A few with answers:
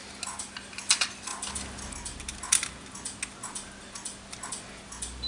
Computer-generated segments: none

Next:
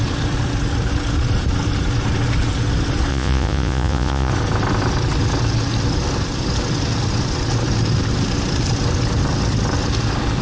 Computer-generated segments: 3.1-4.3 (vocoder, Vocos)